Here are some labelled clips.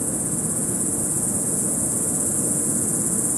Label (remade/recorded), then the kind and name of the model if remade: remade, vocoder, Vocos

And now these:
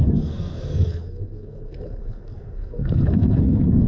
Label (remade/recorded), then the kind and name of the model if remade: remade, codec, SNAC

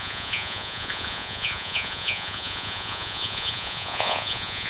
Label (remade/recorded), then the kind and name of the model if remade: remade, vocoder, Vocos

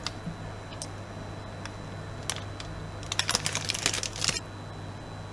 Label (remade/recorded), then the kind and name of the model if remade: recorded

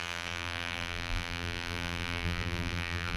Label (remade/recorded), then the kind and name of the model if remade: remade, vocoder, BigVGAN v2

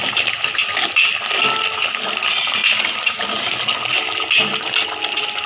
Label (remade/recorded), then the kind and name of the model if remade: recorded